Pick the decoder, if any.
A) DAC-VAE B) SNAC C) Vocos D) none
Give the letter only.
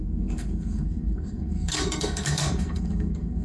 B